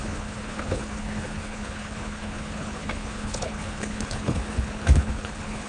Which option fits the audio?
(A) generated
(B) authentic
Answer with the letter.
A